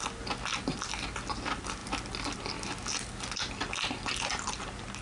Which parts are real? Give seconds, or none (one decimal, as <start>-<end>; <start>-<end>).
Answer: 0.0-5.0